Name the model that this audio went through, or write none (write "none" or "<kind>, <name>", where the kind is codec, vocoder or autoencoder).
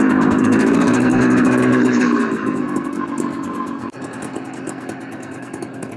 codec, SNAC